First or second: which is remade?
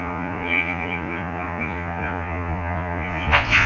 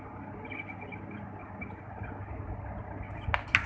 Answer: first